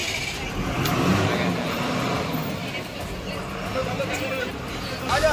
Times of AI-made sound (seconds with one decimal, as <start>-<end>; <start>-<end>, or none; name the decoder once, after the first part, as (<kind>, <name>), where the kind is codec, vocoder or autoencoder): 2.6-3.3 (vocoder, BigVGAN v2); 3.8-4.7